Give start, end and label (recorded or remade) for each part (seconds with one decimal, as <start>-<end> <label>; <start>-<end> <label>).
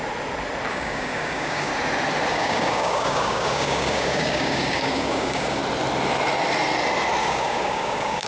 0.0-0.7 recorded; 0.7-1.7 remade; 1.7-2.3 recorded; 2.3-5.6 remade; 5.6-7.2 recorded; 7.2-8.3 remade